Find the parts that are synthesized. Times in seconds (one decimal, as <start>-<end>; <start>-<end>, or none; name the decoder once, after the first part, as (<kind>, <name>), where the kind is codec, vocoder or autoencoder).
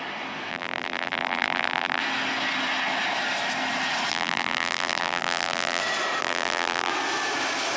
0.5-2.0 (vocoder, BigVGAN v2); 4.1-5.8; 6.2-6.9